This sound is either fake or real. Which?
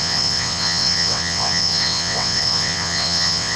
fake